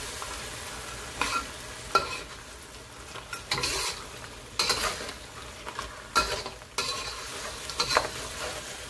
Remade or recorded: recorded